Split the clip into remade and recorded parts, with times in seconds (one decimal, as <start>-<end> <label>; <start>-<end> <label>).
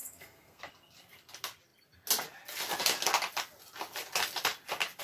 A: 0.0-0.6 remade; 0.6-5.0 recorded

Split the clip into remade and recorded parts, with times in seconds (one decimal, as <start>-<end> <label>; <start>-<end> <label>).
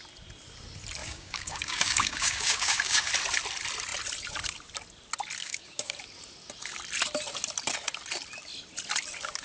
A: 0.0-1.0 recorded; 1.0-3.1 remade; 3.1-5.4 recorded; 5.4-5.9 remade; 5.9-9.4 recorded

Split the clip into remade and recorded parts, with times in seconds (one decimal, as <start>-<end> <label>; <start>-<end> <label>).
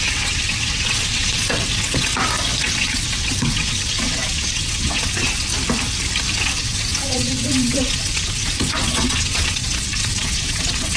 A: 0.0-2.1 remade; 2.1-2.6 recorded; 2.6-5.5 remade; 5.5-6.3 recorded; 6.3-11.0 remade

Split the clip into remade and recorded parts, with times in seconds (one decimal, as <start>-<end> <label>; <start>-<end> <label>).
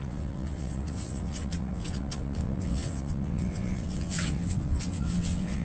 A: 0.0-5.6 remade